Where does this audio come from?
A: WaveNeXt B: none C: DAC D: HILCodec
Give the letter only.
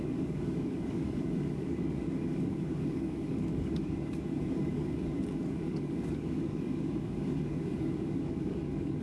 C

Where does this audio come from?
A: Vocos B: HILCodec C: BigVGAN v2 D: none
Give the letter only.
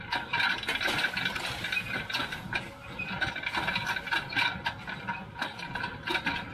D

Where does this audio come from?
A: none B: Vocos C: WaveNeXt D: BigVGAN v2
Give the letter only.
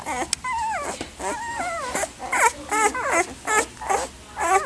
A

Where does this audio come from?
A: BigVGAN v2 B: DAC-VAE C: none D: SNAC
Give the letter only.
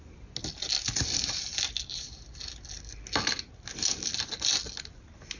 C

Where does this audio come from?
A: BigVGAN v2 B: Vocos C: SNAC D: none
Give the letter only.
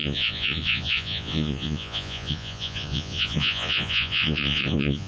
B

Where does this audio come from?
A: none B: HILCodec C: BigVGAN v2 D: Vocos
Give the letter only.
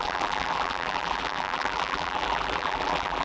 C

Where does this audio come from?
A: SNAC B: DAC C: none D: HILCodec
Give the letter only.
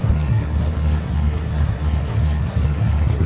A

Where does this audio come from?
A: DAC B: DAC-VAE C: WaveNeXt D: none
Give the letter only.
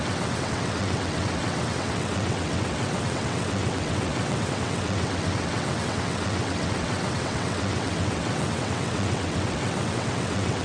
C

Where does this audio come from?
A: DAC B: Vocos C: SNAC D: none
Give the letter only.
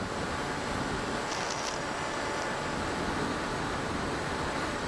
D